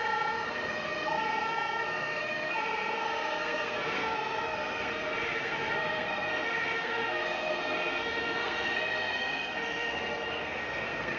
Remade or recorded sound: remade